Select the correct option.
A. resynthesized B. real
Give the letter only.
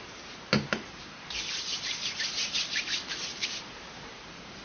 A